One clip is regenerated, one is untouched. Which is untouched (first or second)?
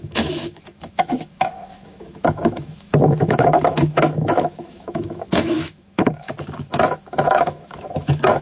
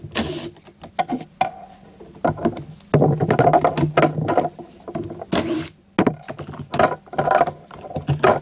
second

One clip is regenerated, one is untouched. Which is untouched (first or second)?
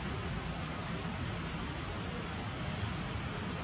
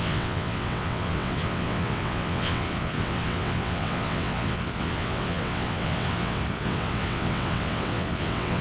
first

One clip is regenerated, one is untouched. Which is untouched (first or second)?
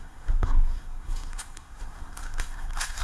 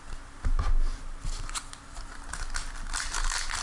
second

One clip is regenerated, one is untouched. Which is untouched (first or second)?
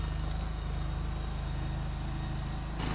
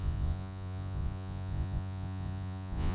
first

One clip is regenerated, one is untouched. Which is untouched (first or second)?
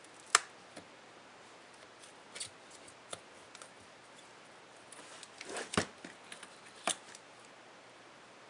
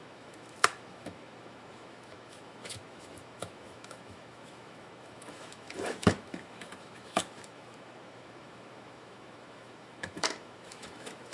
first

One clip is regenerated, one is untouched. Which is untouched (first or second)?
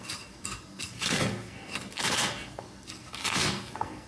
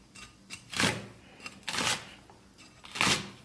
second